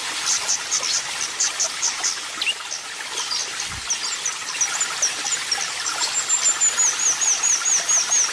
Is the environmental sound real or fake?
real